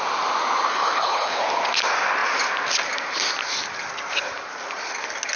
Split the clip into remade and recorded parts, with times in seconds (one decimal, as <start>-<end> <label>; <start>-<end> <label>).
0.0-0.7 recorded; 0.7-1.4 remade; 1.4-5.4 recorded